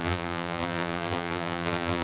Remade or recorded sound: remade